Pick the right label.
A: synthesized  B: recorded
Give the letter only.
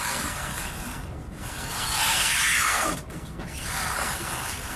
A